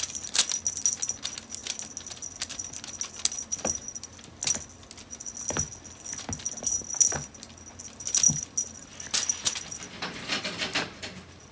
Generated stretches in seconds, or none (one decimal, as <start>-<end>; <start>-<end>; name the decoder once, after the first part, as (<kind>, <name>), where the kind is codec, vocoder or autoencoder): none